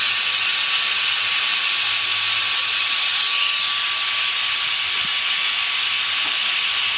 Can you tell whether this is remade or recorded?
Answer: recorded